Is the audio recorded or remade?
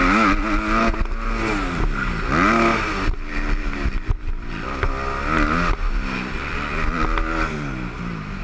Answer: recorded